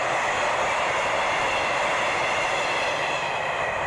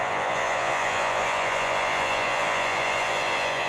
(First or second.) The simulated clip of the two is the second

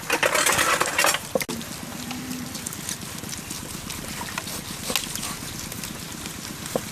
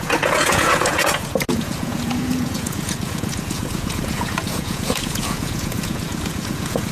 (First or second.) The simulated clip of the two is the second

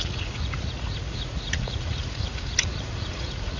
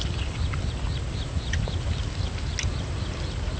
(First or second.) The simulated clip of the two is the first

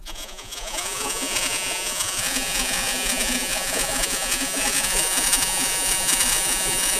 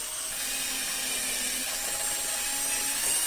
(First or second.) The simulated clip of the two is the first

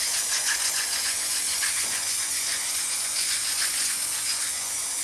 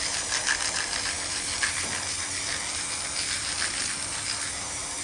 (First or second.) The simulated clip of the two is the first